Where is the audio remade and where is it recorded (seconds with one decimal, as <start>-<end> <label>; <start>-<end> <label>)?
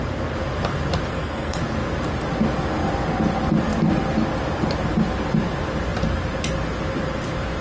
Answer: 0.0-1.1 recorded; 1.1-1.6 remade; 1.6-7.6 recorded